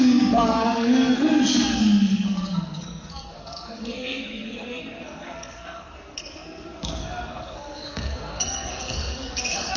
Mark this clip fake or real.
fake